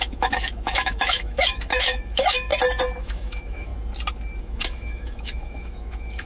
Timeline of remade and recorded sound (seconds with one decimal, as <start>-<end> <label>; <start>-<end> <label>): 0.0-2.5 remade; 2.5-3.0 recorded; 3.0-3.7 remade; 3.7-4.4 recorded; 4.4-6.3 remade